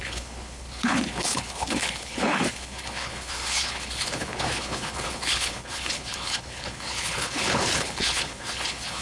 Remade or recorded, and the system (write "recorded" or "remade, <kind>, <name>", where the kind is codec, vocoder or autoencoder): remade, codec, HILCodec